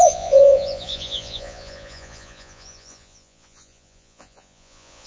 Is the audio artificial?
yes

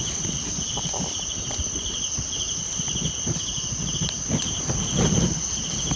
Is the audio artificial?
no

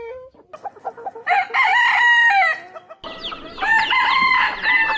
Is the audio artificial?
no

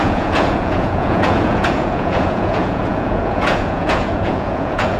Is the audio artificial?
yes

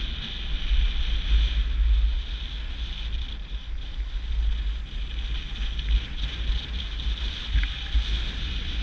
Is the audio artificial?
no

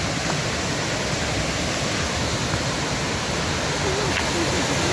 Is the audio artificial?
no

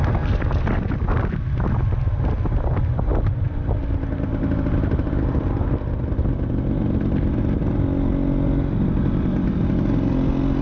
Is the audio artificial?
no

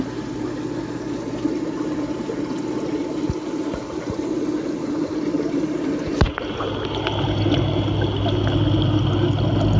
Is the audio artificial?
no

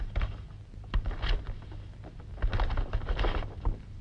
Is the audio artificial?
no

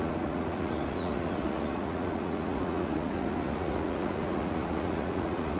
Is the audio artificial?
yes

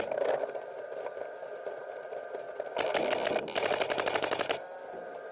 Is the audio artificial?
no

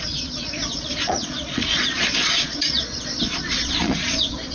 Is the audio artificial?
yes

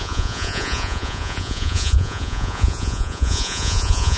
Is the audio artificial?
yes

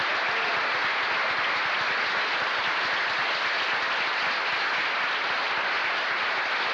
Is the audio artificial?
no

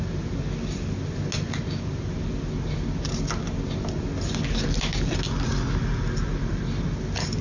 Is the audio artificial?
no